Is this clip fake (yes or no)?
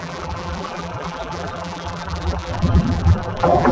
yes